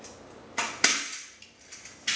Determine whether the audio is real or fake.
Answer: real